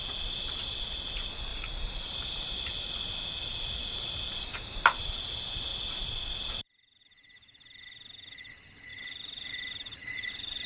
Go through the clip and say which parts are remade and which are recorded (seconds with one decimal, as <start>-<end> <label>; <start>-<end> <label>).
0.0-1.5 recorded; 1.5-4.5 remade; 4.5-8.9 recorded; 8.9-10.7 remade